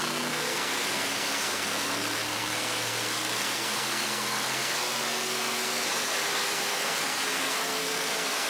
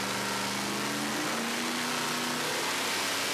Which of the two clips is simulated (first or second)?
first